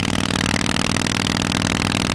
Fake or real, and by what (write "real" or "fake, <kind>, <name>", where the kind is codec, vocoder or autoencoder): real